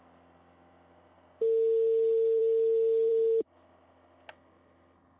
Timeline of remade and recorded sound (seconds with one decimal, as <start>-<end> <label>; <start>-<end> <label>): 0.0-5.2 recorded